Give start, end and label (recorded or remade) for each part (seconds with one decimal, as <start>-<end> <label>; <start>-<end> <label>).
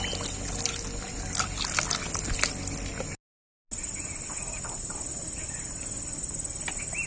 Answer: 0.0-7.1 recorded